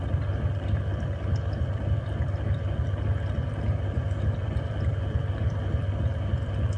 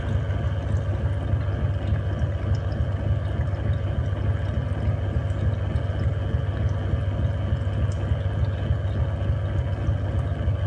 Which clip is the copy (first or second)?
first